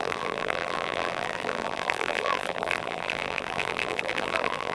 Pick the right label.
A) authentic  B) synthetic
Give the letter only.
B